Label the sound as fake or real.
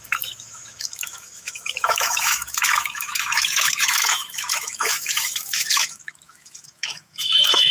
fake